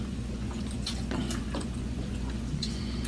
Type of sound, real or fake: fake